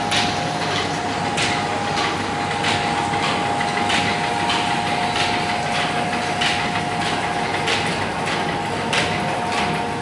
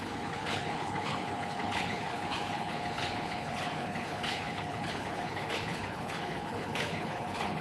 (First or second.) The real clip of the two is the first